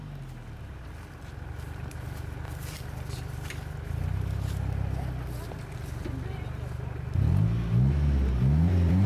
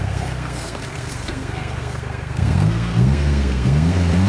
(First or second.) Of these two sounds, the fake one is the second